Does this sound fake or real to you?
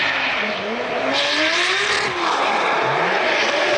fake